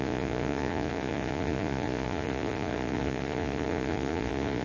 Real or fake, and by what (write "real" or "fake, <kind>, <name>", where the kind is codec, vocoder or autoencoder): fake, vocoder, Vocos